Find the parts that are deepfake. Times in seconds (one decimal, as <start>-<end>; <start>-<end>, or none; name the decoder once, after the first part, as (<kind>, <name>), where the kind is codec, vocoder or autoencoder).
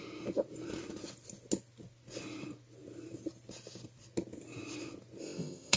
5.2-5.8 (codec, ZipCodec)